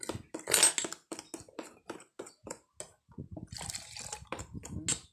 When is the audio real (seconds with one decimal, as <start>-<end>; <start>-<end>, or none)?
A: 0.0-5.1